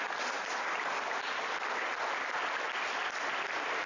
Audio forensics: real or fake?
real